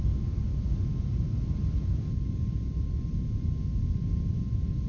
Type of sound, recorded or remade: recorded